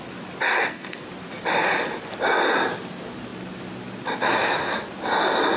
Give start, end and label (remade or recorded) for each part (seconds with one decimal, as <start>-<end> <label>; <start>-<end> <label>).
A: 0.0-0.5 recorded; 0.5-1.0 remade; 1.0-5.6 recorded